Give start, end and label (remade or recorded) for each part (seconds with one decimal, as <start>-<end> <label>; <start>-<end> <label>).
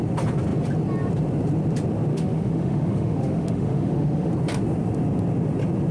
0.0-2.1 recorded; 2.1-4.3 remade; 4.3-5.9 recorded